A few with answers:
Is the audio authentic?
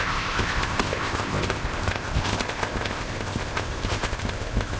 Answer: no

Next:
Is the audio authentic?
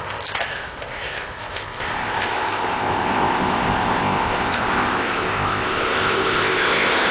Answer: no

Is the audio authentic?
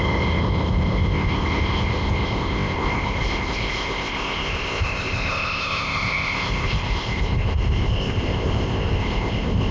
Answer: no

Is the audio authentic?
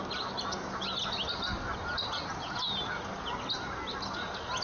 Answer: yes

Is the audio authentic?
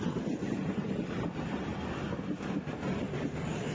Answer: yes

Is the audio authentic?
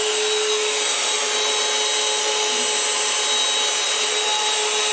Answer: yes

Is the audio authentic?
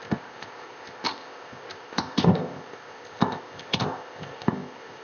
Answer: no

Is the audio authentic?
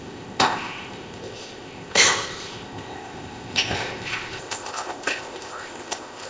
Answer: no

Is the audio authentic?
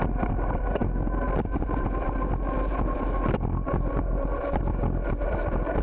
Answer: yes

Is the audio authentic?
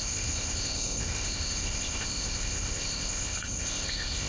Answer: no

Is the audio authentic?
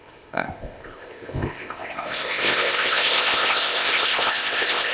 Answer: no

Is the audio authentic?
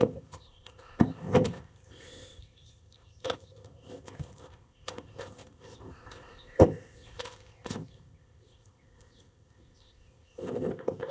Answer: no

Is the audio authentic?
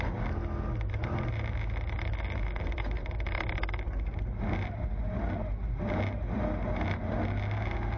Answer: yes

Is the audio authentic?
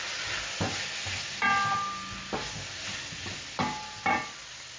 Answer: yes